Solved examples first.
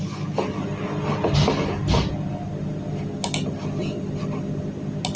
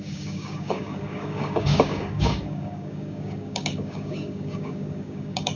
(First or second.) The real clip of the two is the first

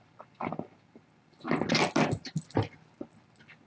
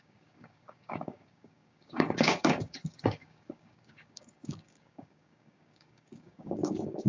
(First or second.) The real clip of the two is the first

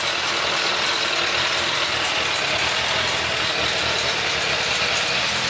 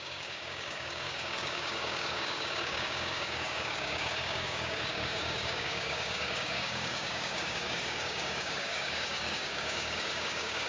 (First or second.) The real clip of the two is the first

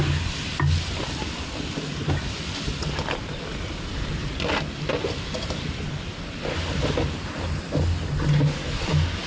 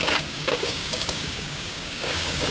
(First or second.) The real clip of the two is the first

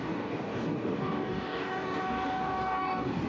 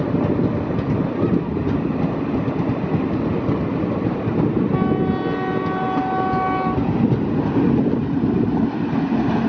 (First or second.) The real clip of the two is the second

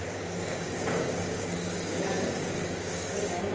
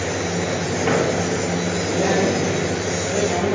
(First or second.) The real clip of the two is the second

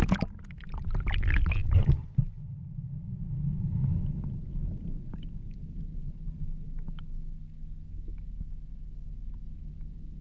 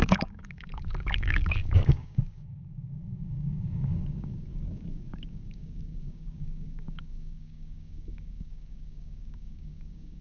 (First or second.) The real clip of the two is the first